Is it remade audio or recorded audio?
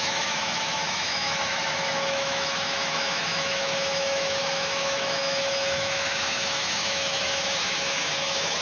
remade